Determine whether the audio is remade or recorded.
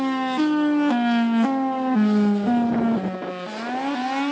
recorded